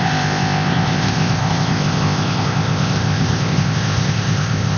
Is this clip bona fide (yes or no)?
no